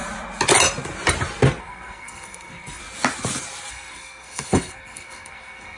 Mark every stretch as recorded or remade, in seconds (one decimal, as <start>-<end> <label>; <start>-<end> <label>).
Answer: 0.0-1.6 recorded; 1.6-2.8 remade; 2.8-3.7 recorded; 3.7-5.8 remade